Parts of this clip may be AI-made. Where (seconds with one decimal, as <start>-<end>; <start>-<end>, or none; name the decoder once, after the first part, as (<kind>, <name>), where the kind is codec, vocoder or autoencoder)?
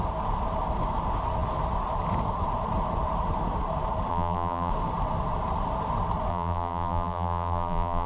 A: 4.1-4.7 (vocoder, BigVGAN v2); 6.3-8.1